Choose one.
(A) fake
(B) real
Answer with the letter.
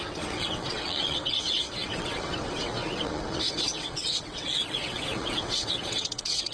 A